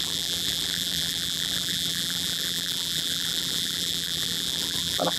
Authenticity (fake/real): fake